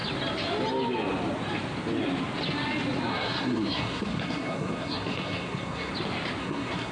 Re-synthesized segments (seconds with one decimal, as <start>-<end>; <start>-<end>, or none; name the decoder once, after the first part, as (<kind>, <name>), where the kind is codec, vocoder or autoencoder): 3.1-5.9 (codec, SNAC); 6.4-6.9

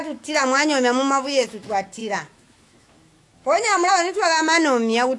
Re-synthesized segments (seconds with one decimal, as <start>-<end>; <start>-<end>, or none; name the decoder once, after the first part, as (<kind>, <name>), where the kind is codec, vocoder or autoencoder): 0.0-5.2 (autoencoder, DAC-VAE)

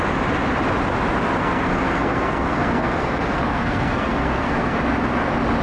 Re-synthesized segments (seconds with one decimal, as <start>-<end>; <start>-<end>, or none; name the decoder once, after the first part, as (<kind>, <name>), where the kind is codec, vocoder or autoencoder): 1.4-4.8 (codec, SNAC)

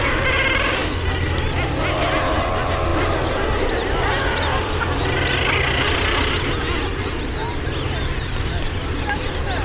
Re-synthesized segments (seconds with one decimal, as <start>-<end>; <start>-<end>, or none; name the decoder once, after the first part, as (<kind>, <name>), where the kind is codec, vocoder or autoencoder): none

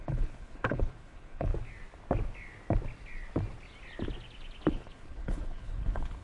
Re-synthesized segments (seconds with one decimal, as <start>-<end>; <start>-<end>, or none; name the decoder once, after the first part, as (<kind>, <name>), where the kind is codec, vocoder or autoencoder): 0.0-1.5 (codec, HILCodec); 4.7-6.2

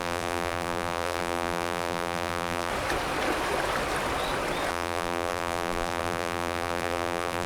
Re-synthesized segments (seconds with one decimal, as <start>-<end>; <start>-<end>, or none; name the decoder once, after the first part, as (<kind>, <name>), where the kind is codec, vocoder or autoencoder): 0.0-2.7 (vocoder, BigVGAN v2); 4.7-7.5

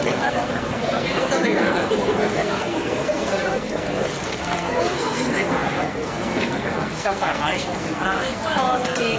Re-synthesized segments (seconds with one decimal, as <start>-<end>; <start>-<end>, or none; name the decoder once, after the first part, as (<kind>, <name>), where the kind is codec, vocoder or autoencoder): 0.0-9.2 (codec, SNAC)